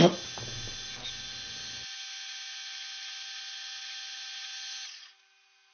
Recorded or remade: recorded